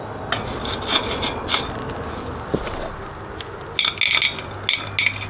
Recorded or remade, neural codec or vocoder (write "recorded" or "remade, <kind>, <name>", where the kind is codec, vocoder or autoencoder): recorded